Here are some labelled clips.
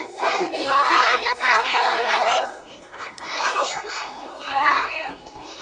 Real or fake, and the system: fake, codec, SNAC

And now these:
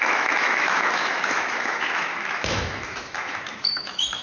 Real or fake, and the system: fake, autoencoder, DAC-VAE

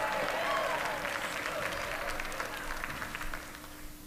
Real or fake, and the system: real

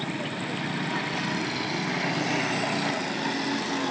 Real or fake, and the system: real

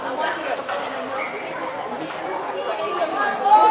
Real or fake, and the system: real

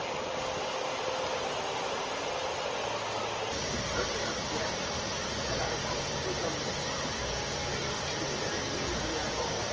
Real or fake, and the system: real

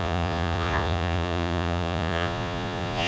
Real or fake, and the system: fake, vocoder, Vocos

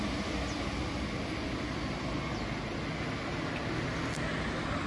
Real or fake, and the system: real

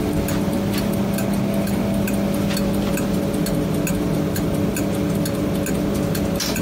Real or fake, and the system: real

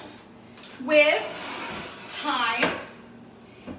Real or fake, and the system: real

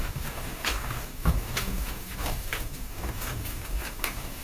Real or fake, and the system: fake, codec, DAC